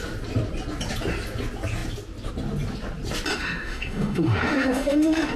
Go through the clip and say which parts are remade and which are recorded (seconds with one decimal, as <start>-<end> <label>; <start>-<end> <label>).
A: 0.0-3.3 recorded; 3.3-5.4 remade